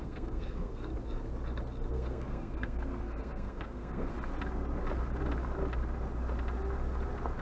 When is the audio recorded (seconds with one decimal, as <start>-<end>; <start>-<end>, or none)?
0.9-1.9; 4.1-7.4